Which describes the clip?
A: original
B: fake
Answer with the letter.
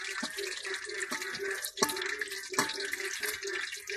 A